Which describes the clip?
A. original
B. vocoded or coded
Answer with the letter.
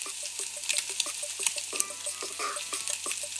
A